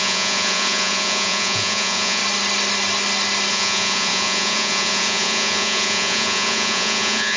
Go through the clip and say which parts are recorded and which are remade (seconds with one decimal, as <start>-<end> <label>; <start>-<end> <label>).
0.0-2.2 remade; 2.2-3.5 recorded; 3.5-7.4 remade